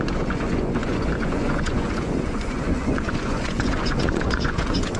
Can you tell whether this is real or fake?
fake